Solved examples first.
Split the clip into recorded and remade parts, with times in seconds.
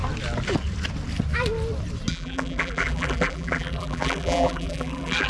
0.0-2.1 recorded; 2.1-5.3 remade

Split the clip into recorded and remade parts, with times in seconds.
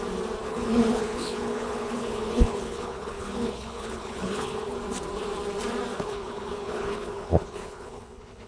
0.0-0.4 recorded; 0.4-4.8 remade; 4.8-5.9 recorded; 5.9-8.5 remade